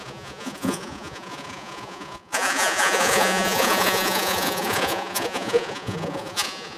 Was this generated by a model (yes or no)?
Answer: yes